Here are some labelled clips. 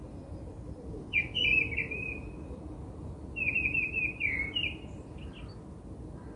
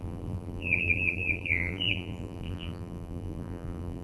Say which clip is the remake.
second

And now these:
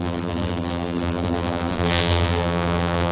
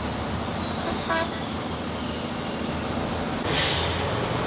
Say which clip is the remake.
first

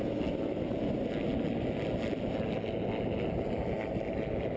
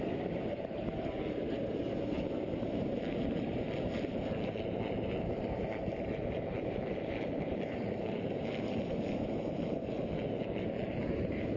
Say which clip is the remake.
second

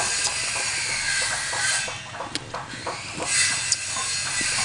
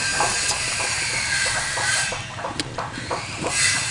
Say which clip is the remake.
second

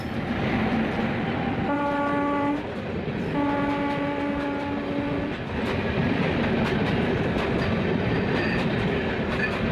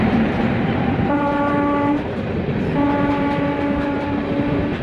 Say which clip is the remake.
second